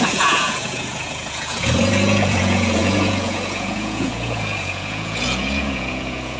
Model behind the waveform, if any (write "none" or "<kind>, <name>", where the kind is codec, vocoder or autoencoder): vocoder, Vocos